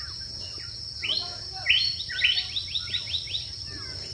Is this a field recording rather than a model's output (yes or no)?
yes